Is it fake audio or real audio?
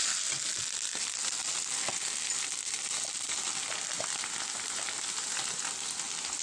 real